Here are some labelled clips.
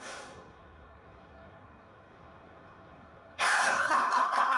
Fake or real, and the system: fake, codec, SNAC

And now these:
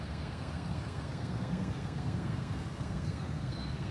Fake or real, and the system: fake, codec, SNAC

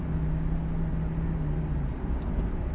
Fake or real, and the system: real